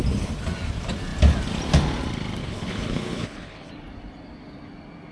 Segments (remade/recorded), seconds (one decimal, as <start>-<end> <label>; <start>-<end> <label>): 0.0-2.4 recorded; 2.4-3.7 remade; 3.7-5.1 recorded